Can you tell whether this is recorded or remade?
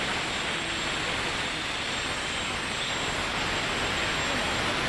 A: recorded